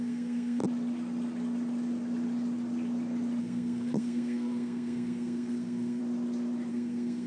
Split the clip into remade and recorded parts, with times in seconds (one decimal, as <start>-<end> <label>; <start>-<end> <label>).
0.0-0.6 remade; 0.6-3.4 recorded; 3.4-6.0 remade; 6.0-6.7 recorded; 6.7-7.3 remade